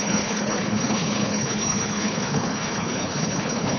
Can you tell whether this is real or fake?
fake